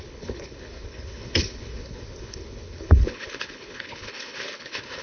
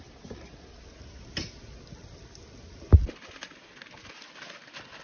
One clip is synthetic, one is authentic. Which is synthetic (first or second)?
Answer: first